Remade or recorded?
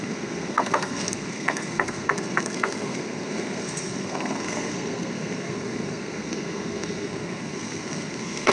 remade